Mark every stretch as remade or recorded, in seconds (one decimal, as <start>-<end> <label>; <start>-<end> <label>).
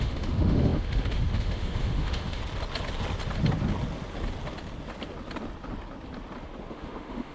0.0-2.4 remade; 2.4-6.7 recorded; 6.7-7.3 remade